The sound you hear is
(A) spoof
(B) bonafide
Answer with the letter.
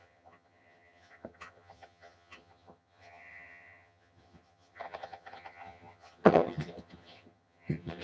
A